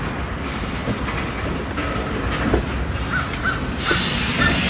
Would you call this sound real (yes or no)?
yes